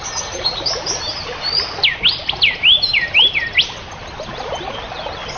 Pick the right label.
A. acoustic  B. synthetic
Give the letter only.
A